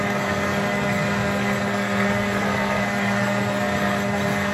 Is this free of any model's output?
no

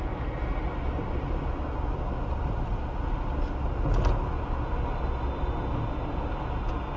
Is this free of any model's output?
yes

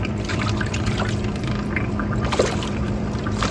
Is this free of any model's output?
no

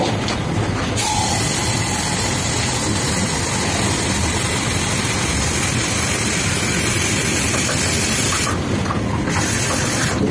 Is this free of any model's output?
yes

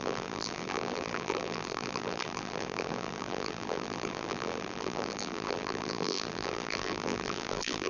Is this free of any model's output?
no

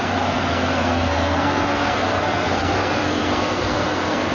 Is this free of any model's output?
no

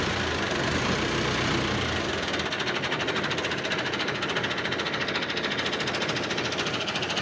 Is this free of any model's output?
yes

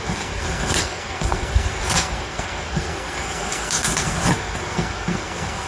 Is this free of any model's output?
no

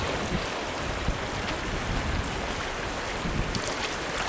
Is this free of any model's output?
yes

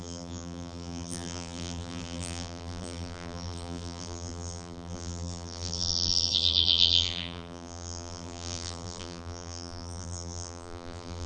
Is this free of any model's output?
no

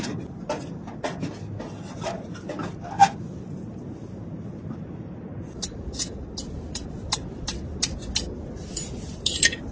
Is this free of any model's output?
yes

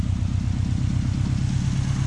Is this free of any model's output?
yes